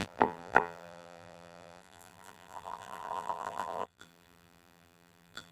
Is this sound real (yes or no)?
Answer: no